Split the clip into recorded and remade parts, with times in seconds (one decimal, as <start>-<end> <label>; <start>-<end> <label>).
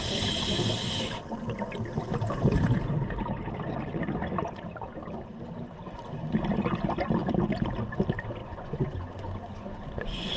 0.0-8.4 recorded; 8.4-10.4 remade